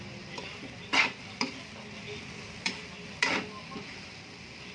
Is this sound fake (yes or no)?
yes